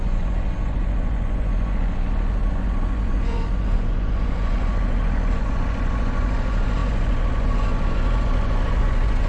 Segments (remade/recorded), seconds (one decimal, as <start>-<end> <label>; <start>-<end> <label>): 0.0-9.3 remade